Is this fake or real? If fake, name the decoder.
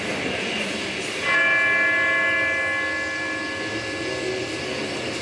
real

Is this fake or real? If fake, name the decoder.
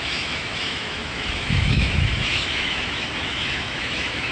fake, autoencoder, DAC-VAE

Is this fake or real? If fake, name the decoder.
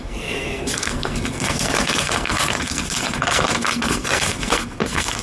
fake, codec, SNAC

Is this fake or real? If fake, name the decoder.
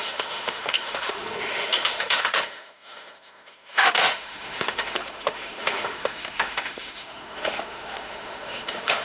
fake, autoencoder, DAC-VAE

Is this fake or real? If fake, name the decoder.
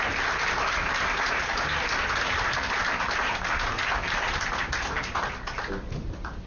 real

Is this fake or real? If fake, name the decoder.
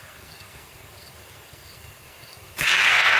fake, codec, SNAC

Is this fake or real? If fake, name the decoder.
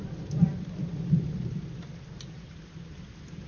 real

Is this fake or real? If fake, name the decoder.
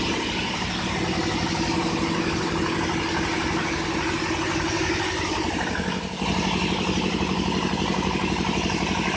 real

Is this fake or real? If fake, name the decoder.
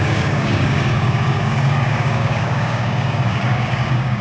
fake, codec, DAC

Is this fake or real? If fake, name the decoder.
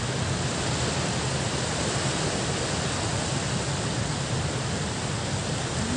real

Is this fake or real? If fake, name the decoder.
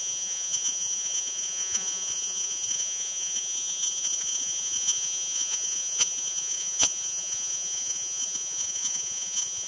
fake, vocoder, Vocos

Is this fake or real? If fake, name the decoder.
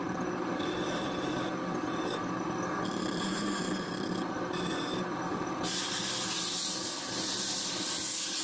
real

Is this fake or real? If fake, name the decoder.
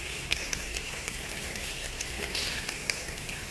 fake, codec, SNAC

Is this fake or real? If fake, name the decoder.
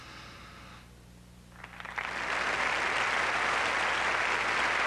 real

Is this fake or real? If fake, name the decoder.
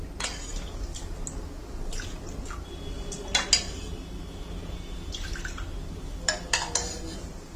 real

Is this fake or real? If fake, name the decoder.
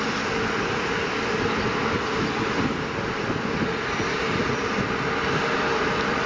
real